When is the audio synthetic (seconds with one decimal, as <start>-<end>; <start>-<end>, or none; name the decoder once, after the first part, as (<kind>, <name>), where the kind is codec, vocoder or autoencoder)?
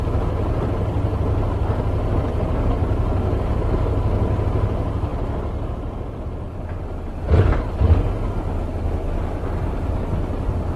none